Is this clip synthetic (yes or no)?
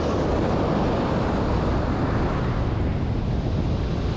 no